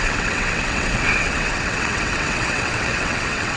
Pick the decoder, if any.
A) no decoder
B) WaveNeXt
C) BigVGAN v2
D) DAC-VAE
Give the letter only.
B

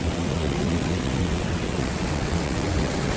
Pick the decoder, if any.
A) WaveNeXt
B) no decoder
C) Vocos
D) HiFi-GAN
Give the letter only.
A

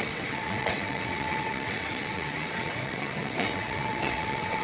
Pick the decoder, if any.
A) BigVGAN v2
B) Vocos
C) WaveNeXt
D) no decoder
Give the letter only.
C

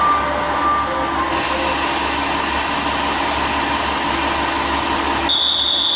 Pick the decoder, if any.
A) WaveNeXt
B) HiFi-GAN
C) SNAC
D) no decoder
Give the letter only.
D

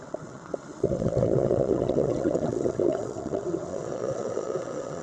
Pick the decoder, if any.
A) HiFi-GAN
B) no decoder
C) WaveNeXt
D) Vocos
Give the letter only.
C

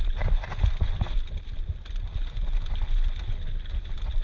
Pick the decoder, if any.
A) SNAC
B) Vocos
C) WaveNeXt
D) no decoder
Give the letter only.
D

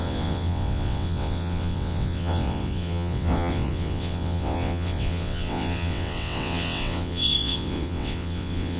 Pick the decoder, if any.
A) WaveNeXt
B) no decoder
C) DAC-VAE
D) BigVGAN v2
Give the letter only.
A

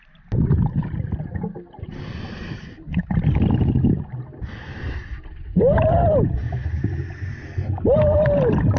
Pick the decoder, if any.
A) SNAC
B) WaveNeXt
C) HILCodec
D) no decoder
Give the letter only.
D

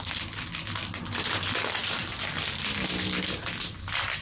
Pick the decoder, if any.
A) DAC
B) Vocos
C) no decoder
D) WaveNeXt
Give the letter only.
C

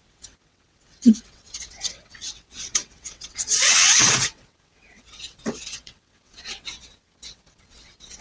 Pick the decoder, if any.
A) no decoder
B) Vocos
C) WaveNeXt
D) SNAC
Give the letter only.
C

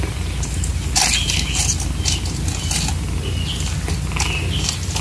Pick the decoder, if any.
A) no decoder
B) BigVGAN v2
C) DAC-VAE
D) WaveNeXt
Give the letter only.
A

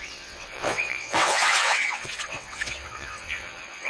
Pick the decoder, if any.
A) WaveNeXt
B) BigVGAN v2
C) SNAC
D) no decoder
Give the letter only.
A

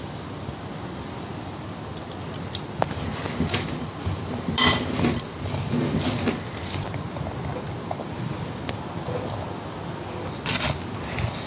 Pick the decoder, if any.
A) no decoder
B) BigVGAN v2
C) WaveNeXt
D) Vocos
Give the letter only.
A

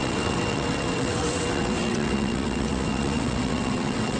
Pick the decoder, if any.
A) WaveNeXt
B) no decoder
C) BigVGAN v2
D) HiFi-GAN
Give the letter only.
A